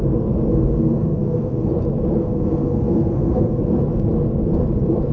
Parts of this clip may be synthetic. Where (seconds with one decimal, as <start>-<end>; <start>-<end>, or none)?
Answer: 0.5-1.7; 2.2-3.6